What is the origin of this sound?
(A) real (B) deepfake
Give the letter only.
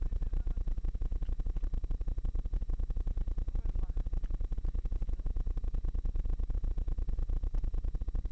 A